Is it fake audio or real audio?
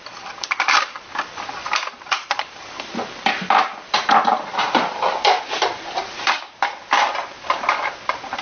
fake